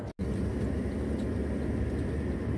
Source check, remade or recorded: recorded